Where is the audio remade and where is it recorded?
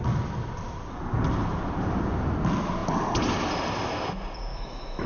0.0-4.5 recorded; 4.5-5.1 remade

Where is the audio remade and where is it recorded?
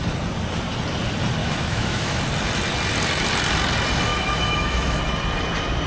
0.0-1.4 recorded; 1.4-2.2 remade; 2.2-4.1 recorded; 4.1-5.0 remade; 5.0-5.9 recorded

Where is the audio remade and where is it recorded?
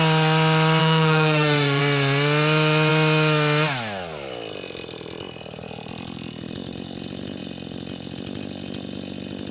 0.0-0.8 recorded; 0.8-1.8 remade; 1.8-9.5 recorded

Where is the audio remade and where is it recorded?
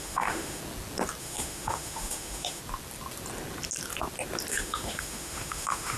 0.0-0.6 remade; 0.6-1.2 recorded; 1.2-2.6 remade; 2.6-4.5 recorded; 4.5-6.0 remade